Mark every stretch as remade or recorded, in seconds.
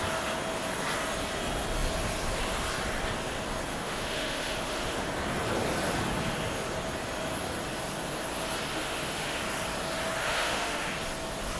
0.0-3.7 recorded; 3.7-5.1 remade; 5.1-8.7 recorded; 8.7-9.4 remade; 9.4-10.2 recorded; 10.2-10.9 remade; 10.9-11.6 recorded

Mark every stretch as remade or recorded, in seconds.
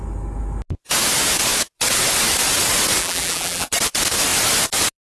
0.0-3.0 recorded; 3.0-3.7 remade; 3.7-5.2 recorded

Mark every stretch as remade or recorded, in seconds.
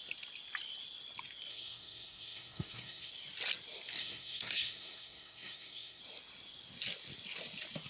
0.0-1.5 recorded; 1.5-3.1 remade; 3.1-4.0 recorded; 4.0-6.0 remade; 6.0-7.9 recorded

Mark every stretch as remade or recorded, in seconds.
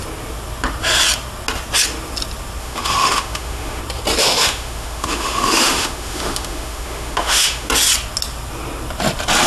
0.0-2.6 recorded; 2.6-3.8 remade; 3.8-4.2 recorded; 4.2-7.7 remade; 7.7-9.5 recorded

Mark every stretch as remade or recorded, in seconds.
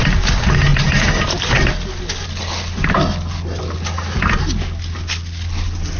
0.0-0.7 recorded; 0.7-1.7 remade; 1.7-6.0 recorded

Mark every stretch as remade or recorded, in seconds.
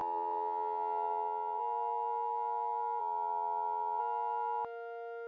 0.0-1.6 remade; 1.6-3.0 recorded; 3.0-4.0 remade; 4.0-5.3 recorded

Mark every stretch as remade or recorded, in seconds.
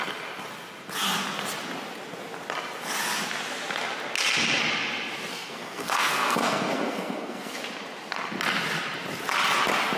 0.0-5.3 recorded; 5.3-7.6 remade; 7.6-10.0 recorded